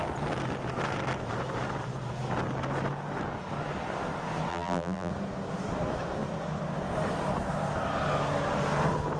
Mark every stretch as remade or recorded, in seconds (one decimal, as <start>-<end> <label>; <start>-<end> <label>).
0.0-4.5 recorded; 4.5-5.1 remade; 5.1-9.2 recorded